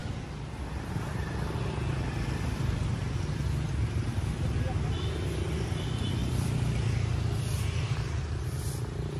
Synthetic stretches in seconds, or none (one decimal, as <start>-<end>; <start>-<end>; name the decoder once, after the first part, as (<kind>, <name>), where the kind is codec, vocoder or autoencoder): 6.2-8.6 (vocoder, BigVGAN v2)